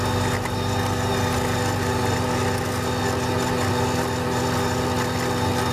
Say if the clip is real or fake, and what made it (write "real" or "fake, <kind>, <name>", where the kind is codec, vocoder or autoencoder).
real